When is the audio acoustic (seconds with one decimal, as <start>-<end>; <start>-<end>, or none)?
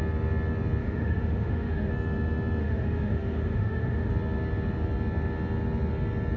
0.0-0.8; 1.9-2.6; 4.1-6.4